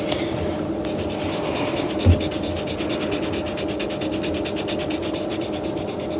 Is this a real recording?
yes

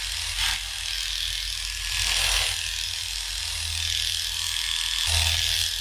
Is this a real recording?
yes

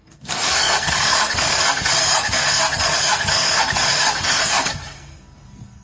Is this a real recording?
no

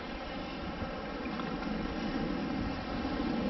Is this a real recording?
yes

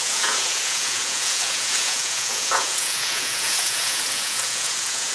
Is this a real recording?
no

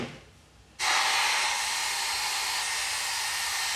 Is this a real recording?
yes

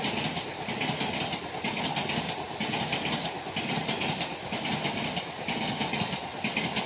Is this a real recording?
yes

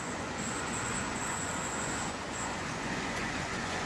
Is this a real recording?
no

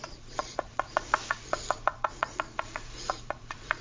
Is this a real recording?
no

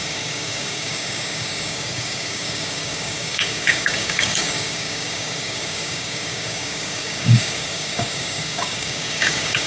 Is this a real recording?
no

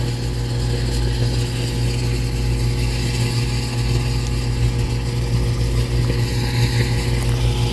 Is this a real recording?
yes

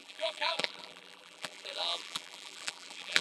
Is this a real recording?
no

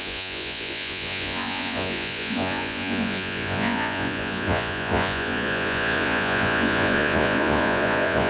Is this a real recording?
no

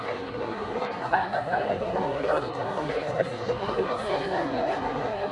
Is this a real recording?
no